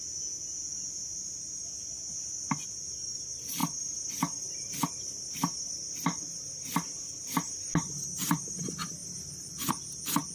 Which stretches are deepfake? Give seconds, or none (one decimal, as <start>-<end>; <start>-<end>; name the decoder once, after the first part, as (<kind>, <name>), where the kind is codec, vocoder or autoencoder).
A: none

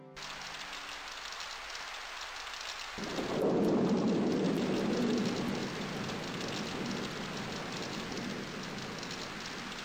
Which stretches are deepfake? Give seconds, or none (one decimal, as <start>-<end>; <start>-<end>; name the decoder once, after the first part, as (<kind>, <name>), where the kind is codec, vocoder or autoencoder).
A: none

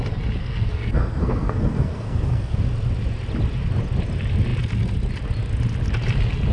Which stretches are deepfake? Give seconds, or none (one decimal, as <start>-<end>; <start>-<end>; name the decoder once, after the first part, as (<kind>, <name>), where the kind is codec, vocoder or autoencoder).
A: 0.4-2.6 (codec, SNAC)

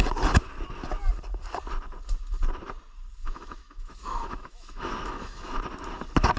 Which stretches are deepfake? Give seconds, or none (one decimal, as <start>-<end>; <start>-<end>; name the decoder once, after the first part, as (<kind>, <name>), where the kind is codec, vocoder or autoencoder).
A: 3.2-5.6 (autoencoder, DAC-VAE)

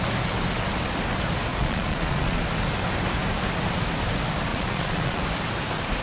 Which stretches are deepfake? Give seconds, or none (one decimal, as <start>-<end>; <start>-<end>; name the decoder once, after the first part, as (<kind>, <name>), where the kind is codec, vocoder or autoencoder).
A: 1.5-2.4 (vocoder, Vocos); 4.5-5.2